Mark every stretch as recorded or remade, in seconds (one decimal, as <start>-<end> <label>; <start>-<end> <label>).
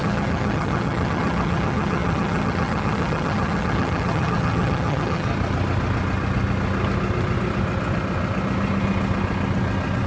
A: 0.0-5.3 remade; 5.3-10.1 recorded